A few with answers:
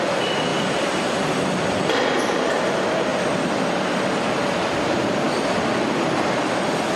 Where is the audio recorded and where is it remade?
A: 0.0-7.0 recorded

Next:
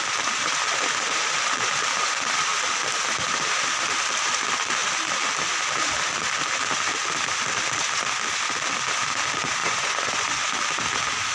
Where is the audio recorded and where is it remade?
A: 0.0-9.6 recorded; 9.6-10.4 remade; 10.4-11.3 recorded

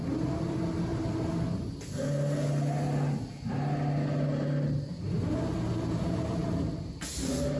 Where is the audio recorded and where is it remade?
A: 0.0-7.6 recorded

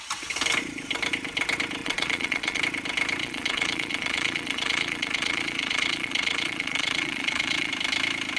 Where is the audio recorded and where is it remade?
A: 0.0-1.8 recorded; 1.8-2.6 remade; 2.6-3.2 recorded; 3.2-7.7 remade; 7.7-8.4 recorded

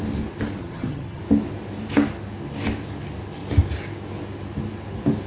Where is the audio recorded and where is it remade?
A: 0.0-0.6 recorded; 0.6-1.2 remade; 1.2-5.3 recorded